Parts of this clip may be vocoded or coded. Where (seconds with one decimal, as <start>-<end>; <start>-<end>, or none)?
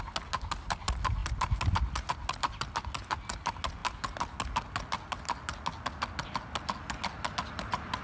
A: none